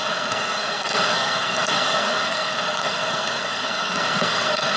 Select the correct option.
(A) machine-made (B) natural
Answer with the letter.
A